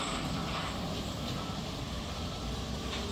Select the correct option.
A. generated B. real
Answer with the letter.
A